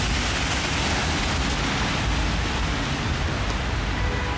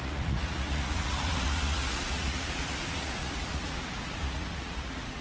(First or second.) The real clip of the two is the first